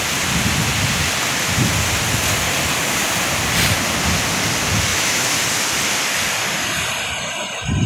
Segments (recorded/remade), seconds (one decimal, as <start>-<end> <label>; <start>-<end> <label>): 0.0-4.9 recorded; 4.9-5.4 remade; 5.4-7.9 recorded